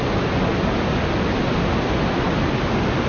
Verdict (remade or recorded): recorded